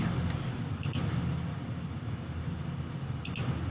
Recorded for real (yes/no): yes